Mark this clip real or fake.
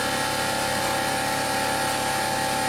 real